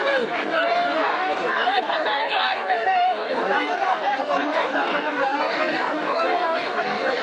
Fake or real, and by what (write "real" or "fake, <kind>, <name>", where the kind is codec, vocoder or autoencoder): fake, codec, DAC